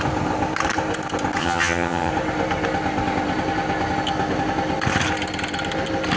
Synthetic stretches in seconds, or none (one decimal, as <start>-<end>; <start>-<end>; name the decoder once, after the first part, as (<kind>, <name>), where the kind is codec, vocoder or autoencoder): 1.4-2.1 (vocoder, HiFi-GAN)